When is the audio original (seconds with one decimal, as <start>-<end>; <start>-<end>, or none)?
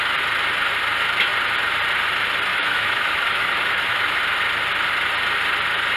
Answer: 0.0-2.5; 4.2-6.0